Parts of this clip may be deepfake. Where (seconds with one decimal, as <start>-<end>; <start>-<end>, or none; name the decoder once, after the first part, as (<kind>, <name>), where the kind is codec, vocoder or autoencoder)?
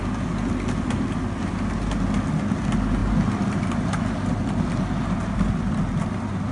none